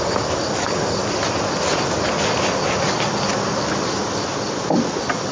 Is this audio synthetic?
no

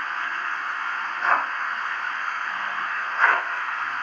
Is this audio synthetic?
yes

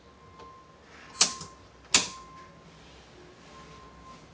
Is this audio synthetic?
no